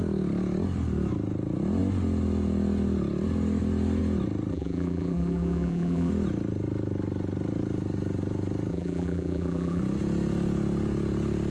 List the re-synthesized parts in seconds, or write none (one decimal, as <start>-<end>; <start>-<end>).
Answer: 4.5-6.1; 8.7-9.8